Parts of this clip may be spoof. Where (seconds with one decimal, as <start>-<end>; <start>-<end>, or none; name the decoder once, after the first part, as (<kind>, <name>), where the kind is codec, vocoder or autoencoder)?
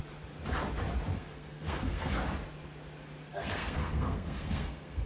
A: 1.1-2.1 (codec, SNAC); 3.3-5.1